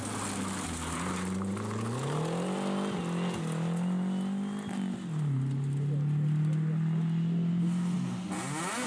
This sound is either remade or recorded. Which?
recorded